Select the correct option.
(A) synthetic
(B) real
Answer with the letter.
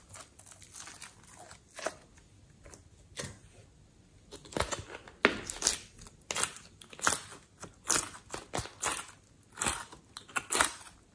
B